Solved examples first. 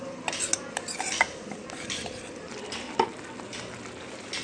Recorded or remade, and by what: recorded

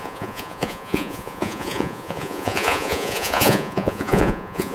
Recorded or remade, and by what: remade, vocoder, Vocos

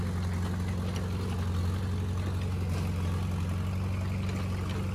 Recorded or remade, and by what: recorded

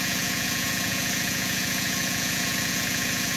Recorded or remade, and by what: remade, vocoder, Vocos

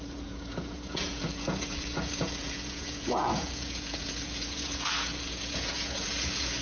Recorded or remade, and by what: remade, vocoder, Vocos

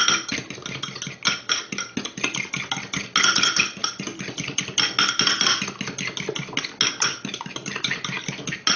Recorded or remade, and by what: recorded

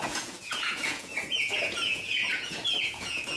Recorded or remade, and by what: remade, vocoder, Vocos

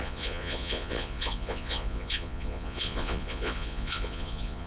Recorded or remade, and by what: remade, vocoder, Vocos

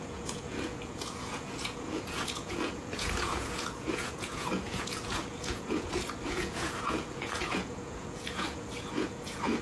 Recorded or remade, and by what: remade, vocoder, Vocos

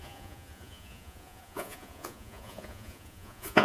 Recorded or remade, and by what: remade, vocoder, Vocos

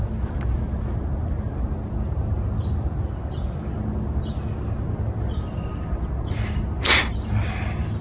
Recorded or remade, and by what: recorded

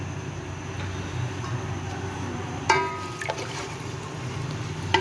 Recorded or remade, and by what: recorded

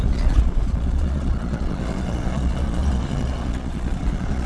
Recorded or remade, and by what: remade, vocoder, Vocos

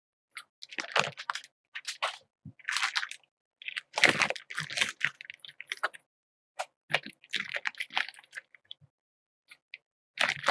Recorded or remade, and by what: recorded